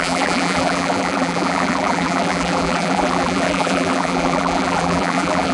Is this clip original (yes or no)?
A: no